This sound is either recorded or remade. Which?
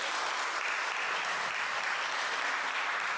recorded